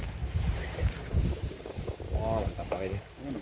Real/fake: fake